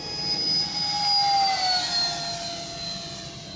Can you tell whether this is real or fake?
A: real